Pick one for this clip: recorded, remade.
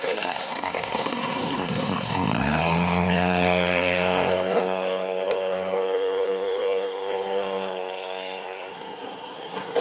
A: remade